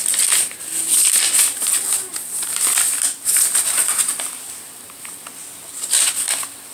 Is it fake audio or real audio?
real